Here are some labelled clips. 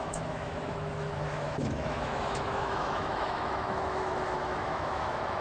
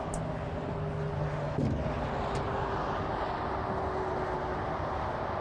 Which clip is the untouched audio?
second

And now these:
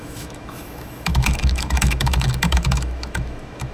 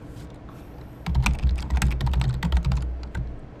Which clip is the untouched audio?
second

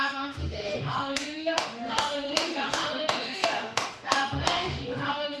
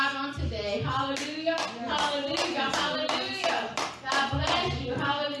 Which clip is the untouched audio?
second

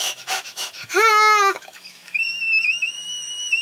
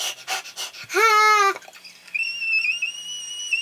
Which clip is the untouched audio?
second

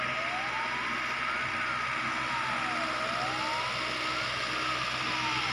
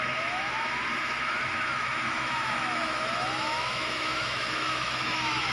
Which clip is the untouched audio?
first